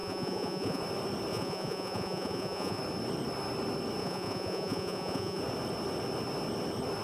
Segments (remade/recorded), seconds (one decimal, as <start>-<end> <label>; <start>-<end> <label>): 0.0-0.8 remade; 0.8-1.3 recorded; 1.3-2.8 remade; 2.8-4.0 recorded; 4.0-5.4 remade; 5.4-7.0 recorded